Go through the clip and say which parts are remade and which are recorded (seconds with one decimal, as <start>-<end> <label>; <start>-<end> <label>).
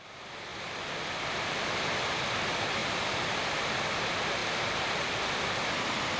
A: 0.0-0.5 recorded; 0.5-2.3 remade; 2.3-2.8 recorded; 2.8-3.6 remade; 3.6-4.4 recorded; 4.4-6.2 remade